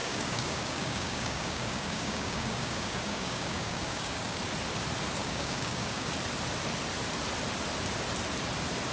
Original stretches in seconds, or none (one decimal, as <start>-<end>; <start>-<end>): 4.4-5.2; 6.1-8.9